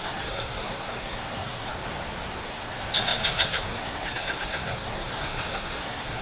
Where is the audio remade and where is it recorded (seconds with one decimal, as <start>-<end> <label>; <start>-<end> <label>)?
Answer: 0.0-1.7 remade; 1.7-2.4 recorded; 2.4-6.2 remade